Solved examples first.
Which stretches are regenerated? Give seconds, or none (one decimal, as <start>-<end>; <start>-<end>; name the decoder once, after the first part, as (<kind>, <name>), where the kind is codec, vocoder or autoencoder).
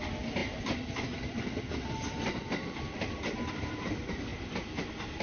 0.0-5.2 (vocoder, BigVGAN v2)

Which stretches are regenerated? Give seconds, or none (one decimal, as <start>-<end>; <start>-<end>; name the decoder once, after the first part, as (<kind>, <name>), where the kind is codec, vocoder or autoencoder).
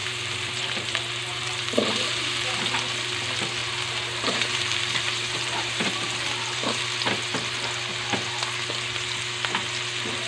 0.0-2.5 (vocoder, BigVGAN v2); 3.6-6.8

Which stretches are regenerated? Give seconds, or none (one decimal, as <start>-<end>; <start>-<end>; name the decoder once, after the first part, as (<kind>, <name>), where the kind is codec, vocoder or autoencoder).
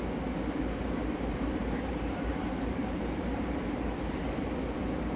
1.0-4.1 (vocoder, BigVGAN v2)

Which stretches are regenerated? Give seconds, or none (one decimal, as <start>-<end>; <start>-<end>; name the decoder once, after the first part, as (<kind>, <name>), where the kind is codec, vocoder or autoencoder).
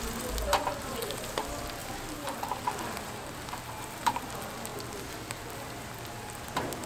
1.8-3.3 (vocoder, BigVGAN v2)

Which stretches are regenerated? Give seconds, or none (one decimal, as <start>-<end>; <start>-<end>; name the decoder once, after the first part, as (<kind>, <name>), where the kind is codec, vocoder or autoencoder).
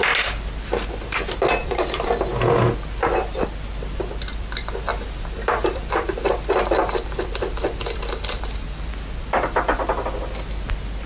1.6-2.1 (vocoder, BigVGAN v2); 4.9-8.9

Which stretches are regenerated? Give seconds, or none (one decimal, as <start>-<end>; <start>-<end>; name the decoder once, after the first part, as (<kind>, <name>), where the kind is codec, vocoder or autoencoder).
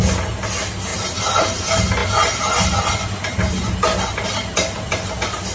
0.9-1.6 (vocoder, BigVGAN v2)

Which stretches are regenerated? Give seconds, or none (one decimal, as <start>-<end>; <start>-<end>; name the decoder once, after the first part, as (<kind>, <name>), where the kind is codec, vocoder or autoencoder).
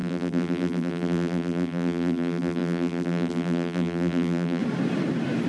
0.0-4.6 (vocoder, BigVGAN v2)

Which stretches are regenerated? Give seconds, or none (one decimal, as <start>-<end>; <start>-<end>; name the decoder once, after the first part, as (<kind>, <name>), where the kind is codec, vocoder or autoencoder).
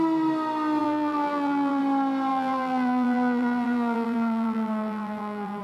0.8-1.8 (vocoder, BigVGAN v2); 2.3-5.6